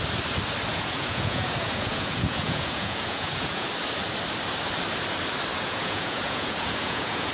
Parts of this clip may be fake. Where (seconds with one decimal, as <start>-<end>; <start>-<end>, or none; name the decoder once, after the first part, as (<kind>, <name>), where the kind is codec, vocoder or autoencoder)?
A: 0.7-3.7 (vocoder, Vocos); 5.5-7.3

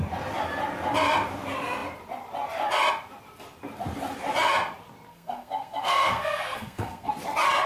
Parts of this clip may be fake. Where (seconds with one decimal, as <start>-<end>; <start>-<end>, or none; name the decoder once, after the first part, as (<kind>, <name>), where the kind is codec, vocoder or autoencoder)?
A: 5.1-7.1 (codec, SNAC)

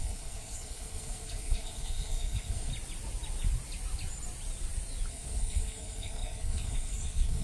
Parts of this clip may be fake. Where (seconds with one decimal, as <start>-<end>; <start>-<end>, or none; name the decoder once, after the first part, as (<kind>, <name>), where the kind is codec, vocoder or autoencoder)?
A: 0.0-2.7 (codec, SNAC); 5.1-7.4